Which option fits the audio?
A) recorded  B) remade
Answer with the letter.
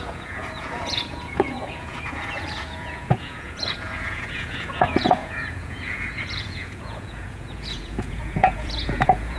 B